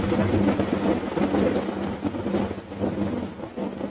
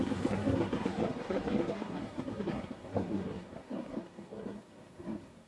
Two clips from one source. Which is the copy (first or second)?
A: second